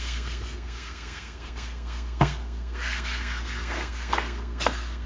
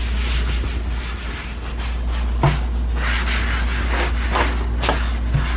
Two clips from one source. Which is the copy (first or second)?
first